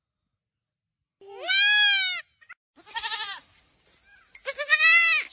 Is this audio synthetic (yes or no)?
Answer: no